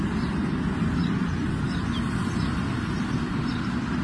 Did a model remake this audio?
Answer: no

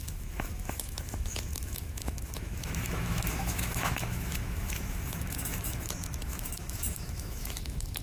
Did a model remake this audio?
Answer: yes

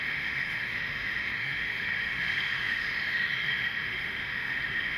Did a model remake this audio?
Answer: yes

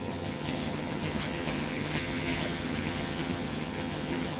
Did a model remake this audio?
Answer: yes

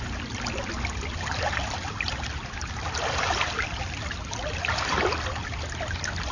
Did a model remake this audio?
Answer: no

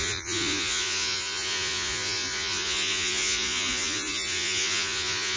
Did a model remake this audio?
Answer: yes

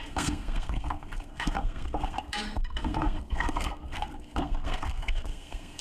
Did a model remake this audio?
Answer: yes